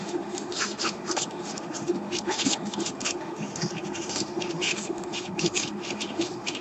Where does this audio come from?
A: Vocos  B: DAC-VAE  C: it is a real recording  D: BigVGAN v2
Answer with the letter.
B